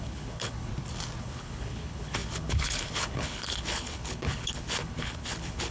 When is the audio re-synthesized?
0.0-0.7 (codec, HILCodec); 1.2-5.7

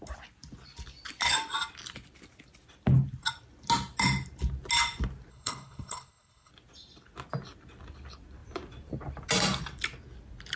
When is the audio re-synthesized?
5.3-6.5 (codec, HILCodec)

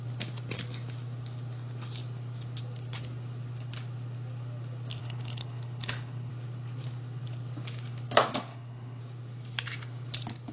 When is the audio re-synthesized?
5.0-6.3 (codec, HILCodec); 8.5-9.0

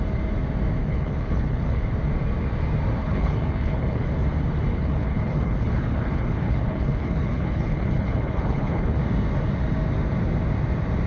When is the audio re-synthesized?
0.8-1.8 (codec, HILCodec); 3.0-4.1; 4.7-9.0